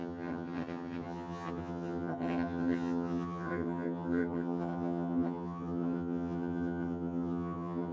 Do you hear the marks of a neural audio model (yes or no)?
yes